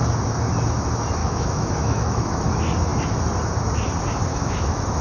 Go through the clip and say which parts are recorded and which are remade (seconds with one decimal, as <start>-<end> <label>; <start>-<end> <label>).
0.0-1.2 recorded; 1.2-2.5 remade; 2.5-4.3 recorded; 4.3-5.0 remade

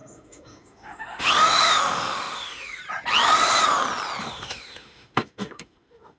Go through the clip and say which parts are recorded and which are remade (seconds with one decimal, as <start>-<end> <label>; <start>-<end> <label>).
0.0-2.8 remade; 2.8-4.2 recorded; 4.2-6.2 remade

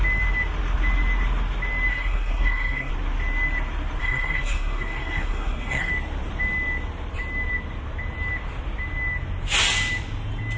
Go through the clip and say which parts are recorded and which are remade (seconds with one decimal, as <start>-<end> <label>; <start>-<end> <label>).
0.0-1.9 recorded; 1.9-2.9 remade; 2.9-4.0 recorded; 4.0-5.9 remade; 5.9-10.6 recorded